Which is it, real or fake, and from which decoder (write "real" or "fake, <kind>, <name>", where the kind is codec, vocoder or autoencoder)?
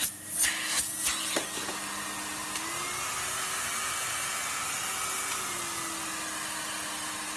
real